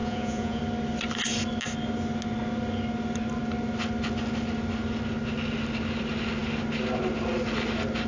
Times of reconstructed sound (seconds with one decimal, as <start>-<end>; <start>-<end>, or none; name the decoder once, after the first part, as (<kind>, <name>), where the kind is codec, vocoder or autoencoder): 0.0-0.6 (vocoder, Vocos)